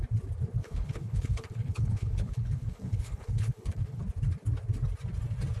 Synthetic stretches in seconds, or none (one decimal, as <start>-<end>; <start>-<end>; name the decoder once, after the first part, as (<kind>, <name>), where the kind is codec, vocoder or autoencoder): 0.6-4.0 (codec, HILCodec)